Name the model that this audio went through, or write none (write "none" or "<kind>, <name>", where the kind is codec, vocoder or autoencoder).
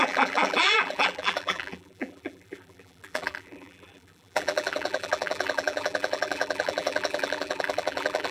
vocoder, BigVGAN v2